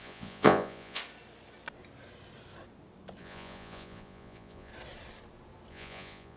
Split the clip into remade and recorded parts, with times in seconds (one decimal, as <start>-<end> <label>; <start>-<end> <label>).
0.0-1.0 remade; 1.0-3.2 recorded; 3.2-4.7 remade; 4.7-5.7 recorded; 5.7-6.4 remade